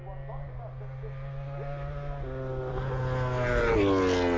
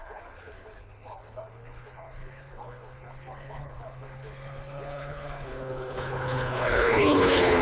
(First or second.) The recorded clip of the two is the first